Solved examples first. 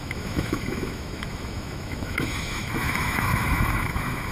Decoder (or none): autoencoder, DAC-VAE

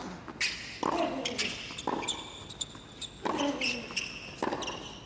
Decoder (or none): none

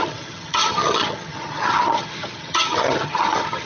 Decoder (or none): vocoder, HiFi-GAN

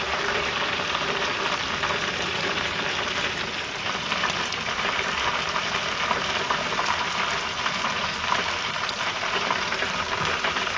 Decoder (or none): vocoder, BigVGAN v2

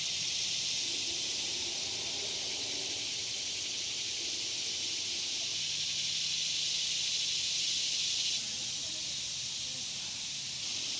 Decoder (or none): none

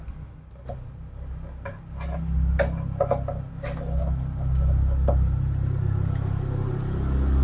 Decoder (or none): none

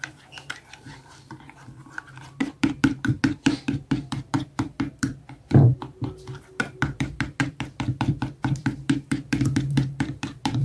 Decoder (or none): vocoder, BigVGAN v2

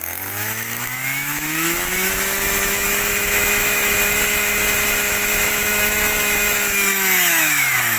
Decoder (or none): autoencoder, DAC-VAE